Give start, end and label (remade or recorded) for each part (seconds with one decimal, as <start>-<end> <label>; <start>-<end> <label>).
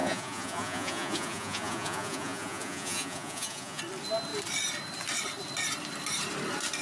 0.0-3.8 remade; 3.8-6.8 recorded